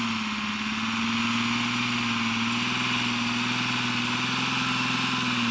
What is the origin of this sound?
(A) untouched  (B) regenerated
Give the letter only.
A